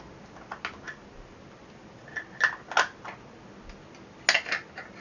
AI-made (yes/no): no